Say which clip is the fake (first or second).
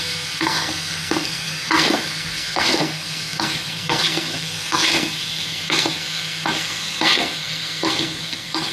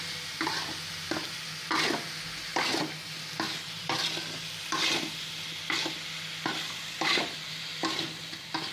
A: first